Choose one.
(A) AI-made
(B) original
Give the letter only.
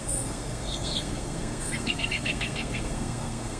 A